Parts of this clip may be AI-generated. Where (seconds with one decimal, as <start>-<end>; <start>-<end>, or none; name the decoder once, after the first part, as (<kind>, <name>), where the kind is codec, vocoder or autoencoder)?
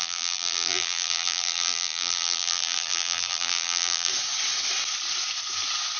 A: 0.0-4.1 (vocoder, BigVGAN v2)